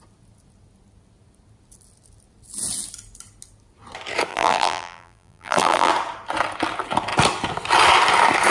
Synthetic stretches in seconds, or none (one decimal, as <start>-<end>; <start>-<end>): 4.3-5.9

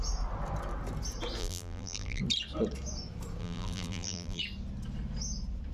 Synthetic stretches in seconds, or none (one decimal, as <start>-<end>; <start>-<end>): 1.4-2.2; 3.4-4.4

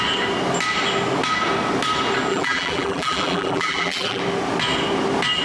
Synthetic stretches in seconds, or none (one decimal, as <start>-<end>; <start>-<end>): 2.3-4.2

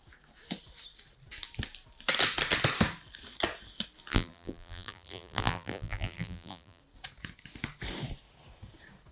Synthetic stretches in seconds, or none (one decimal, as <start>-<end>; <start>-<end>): 4.1-6.8

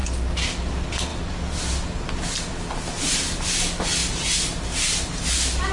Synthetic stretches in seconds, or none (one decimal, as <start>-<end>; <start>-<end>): 4.0-5.3

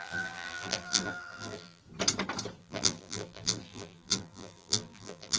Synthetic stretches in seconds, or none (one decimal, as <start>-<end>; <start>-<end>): 0.0-1.8; 2.6-5.4

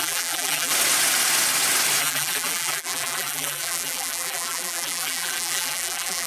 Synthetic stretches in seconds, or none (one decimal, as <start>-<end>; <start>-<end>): 0.0-0.7; 2.0-6.3

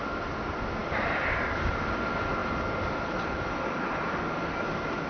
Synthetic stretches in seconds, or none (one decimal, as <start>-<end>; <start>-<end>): 0.8-1.7